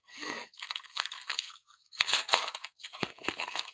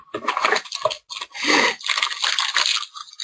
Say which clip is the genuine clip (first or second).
second